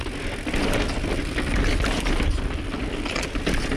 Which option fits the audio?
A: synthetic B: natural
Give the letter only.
B